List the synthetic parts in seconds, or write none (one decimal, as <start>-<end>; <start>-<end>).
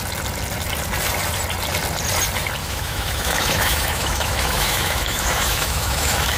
2.6-6.4